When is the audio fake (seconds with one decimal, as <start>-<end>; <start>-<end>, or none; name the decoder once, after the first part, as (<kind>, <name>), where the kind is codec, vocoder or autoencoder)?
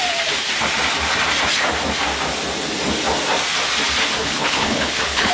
4.2-5.3 (codec, HILCodec)